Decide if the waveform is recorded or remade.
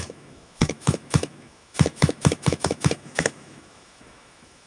remade